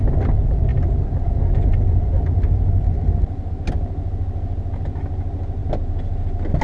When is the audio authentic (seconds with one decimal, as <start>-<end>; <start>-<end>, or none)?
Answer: 0.0-6.6